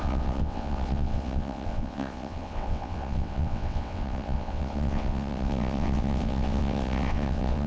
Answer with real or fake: fake